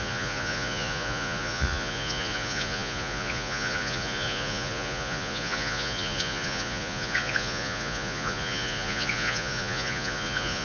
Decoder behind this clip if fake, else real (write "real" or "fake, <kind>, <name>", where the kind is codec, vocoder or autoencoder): fake, vocoder, Vocos